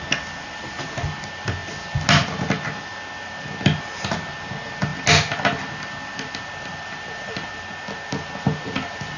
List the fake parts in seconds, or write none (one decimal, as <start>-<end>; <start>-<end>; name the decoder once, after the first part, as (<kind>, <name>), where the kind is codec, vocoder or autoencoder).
none